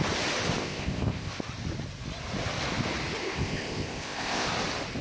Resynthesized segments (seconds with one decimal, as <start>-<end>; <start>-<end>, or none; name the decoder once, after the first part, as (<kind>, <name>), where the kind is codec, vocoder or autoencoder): 0.6-1.3 (codec, ZipCodec); 3.2-4.5